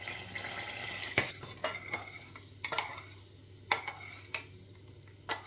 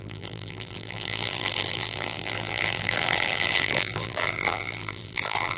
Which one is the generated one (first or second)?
second